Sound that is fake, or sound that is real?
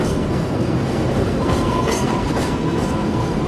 fake